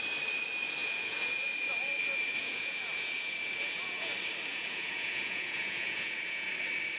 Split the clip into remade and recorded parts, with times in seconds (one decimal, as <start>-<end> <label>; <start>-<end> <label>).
0.0-0.8 recorded; 0.8-4.1 remade; 4.1-4.5 recorded; 4.5-6.5 remade; 6.5-7.0 recorded